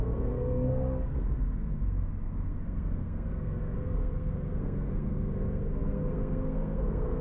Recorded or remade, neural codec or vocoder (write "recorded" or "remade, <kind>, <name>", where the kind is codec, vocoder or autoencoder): remade, codec, SNAC